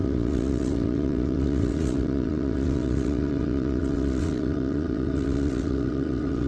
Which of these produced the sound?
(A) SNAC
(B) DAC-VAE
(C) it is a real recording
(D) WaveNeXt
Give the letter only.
D